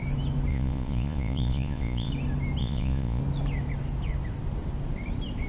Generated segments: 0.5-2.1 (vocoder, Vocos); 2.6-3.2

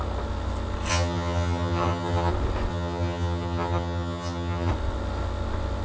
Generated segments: 0.9-2.3 (vocoder, HiFi-GAN); 2.7-4.7